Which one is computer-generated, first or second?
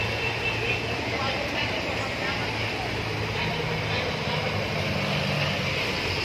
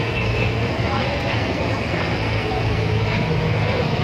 second